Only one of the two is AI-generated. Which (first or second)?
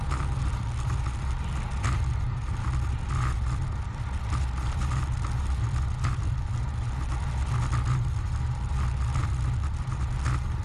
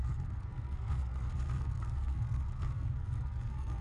second